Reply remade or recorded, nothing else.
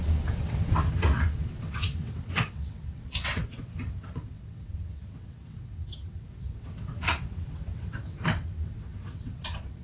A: remade